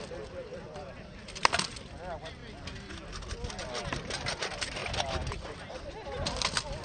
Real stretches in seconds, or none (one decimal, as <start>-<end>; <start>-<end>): 2.4-3.5